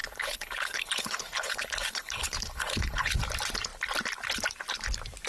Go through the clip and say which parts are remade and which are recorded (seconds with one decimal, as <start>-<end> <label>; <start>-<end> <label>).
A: 0.0-3.2 remade; 3.2-5.3 recorded